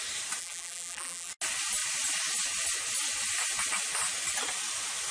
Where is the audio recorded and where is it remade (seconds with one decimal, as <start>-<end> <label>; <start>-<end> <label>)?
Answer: 0.0-0.4 recorded; 0.4-1.3 remade; 1.3-5.1 recorded